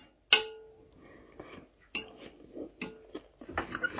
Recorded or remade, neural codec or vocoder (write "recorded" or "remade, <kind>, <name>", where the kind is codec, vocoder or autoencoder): recorded